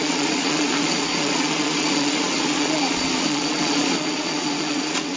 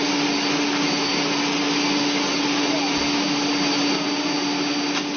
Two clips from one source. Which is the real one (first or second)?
second